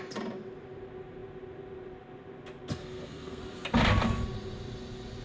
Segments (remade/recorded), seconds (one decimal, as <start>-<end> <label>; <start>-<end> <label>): 0.0-2.8 recorded; 2.8-3.4 remade; 3.4-5.2 recorded